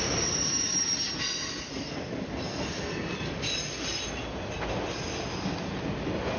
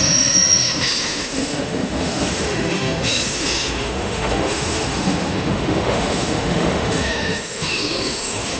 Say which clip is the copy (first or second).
second